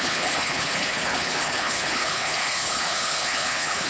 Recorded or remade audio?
remade